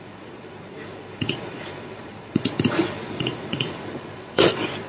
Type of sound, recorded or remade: remade